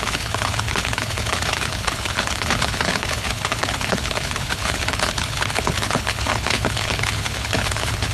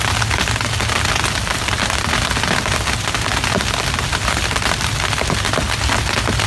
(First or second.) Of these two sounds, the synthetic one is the first